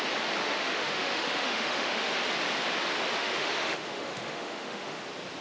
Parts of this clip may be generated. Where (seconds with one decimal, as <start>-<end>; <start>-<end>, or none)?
0.4-2.1; 3.2-5.0